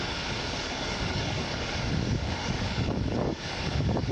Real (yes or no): no